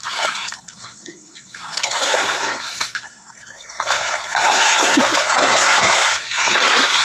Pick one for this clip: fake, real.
fake